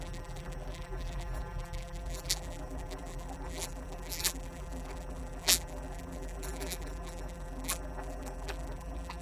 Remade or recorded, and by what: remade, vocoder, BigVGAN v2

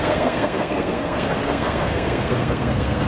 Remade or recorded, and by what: remade, codec, SNAC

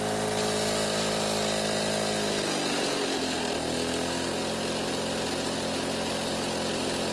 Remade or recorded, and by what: recorded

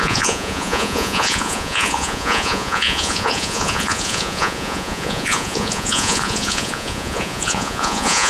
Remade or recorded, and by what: remade, vocoder, Vocos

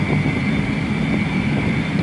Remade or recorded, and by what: recorded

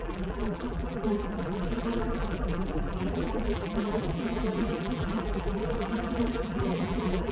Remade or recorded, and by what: remade, vocoder, BigVGAN v2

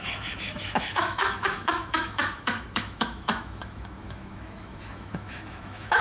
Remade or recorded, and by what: remade, autoencoder, DAC-VAE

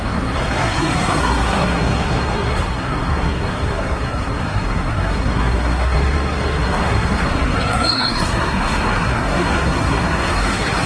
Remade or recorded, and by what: remade, codec, SNAC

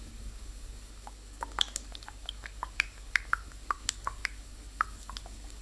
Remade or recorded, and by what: remade, codec, DAC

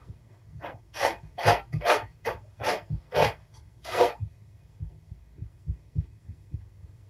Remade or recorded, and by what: remade, codec, SNAC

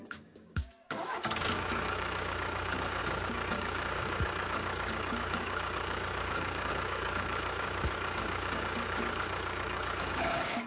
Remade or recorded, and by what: remade, codec, DAC